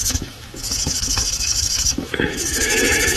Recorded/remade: remade